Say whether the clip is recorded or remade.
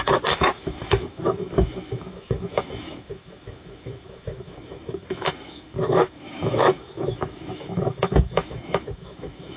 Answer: remade